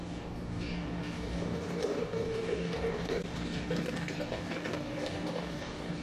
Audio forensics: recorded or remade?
remade